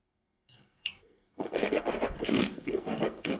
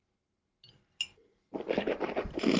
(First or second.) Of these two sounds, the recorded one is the second